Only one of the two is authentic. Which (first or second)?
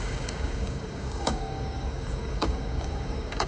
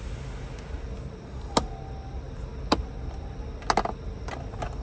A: second